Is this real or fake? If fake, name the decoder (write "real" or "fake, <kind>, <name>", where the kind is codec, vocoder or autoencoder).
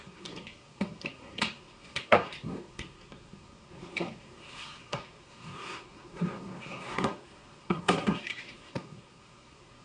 fake, codec, SNAC